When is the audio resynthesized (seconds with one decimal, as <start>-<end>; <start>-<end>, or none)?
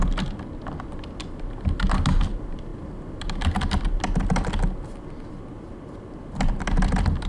none